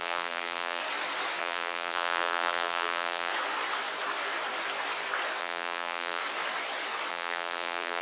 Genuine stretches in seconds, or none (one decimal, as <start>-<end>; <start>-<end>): 0.8-1.4; 3.3-5.4; 6.2-7.1